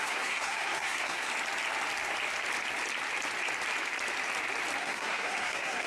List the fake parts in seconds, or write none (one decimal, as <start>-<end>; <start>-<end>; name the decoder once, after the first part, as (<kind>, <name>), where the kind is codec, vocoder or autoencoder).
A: 0.0-1.3 (codec, SNAC); 4.8-5.9